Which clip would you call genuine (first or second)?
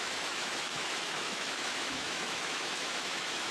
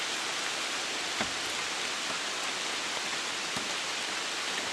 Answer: second